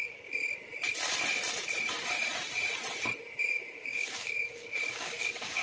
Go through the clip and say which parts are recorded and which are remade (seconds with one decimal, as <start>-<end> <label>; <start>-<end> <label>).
0.0-0.4 remade; 0.4-3.5 recorded; 3.5-5.6 remade